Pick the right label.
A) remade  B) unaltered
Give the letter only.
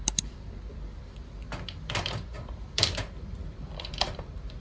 A